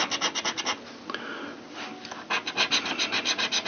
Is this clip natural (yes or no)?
yes